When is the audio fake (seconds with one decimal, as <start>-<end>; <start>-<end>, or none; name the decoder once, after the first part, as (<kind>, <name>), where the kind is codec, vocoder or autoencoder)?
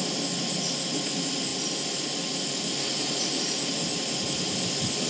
none